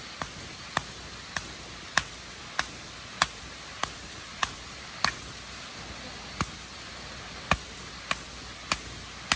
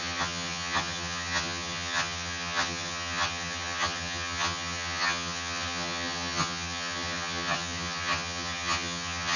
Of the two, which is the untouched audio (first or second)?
first